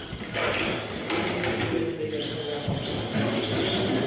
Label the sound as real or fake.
real